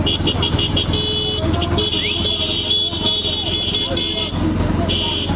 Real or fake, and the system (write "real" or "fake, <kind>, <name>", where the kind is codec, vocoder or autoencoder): real